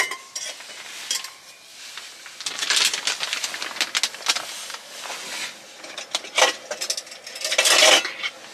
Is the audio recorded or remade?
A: recorded